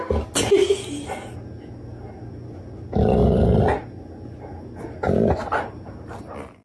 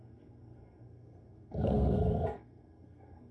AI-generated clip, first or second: second